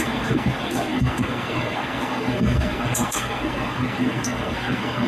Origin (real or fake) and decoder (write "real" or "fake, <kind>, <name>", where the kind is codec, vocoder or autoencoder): fake, codec, SNAC